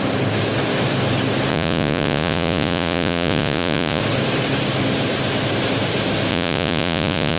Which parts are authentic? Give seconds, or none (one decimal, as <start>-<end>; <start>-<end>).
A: 0.0-1.5; 4.0-6.3